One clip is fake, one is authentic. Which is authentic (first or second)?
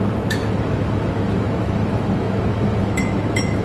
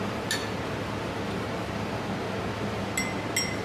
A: second